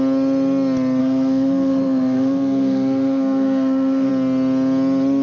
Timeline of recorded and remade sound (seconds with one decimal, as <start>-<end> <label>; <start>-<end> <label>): 0.0-1.0 recorded; 1.0-4.1 remade; 4.1-5.2 recorded